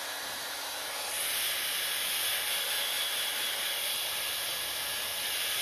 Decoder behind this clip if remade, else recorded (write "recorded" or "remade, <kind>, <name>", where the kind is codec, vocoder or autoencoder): recorded